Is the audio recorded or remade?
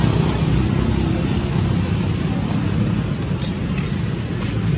recorded